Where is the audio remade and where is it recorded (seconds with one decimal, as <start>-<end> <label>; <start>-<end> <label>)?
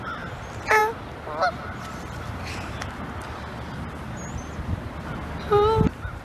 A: 0.0-6.2 recorded